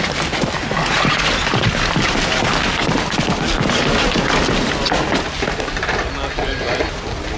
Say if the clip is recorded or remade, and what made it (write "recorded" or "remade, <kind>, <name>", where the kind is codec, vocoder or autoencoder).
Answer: recorded